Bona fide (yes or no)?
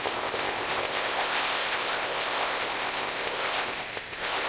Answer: no